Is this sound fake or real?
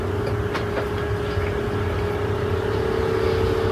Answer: real